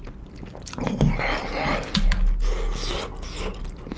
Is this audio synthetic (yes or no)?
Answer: no